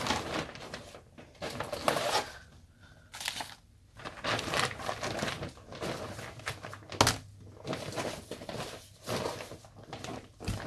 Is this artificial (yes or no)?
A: no